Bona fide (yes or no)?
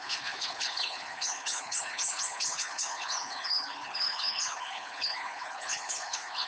no